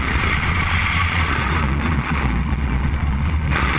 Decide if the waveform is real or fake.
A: fake